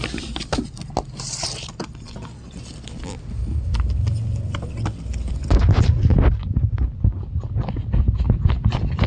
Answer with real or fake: real